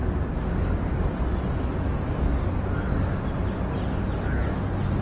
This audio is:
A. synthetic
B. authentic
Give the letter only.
B